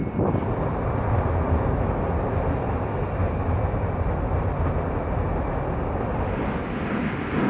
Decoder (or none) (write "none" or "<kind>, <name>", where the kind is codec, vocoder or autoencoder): none